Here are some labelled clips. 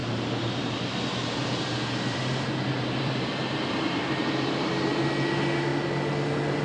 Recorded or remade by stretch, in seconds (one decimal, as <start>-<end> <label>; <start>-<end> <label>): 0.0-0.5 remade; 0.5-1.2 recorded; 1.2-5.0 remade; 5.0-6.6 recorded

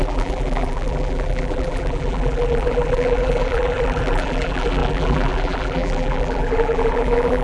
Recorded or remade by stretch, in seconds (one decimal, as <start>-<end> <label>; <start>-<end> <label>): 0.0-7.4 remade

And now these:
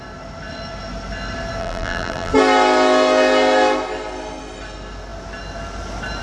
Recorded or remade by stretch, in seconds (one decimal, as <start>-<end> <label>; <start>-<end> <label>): 0.0-1.6 recorded; 1.6-2.3 remade; 2.3-6.2 recorded

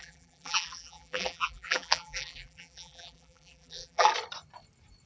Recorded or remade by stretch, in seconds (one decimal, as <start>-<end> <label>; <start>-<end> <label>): 0.0-4.1 remade; 4.1-5.1 recorded

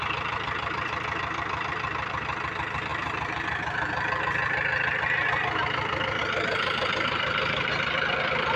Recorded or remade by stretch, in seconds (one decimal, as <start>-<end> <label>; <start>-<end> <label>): 0.0-8.6 remade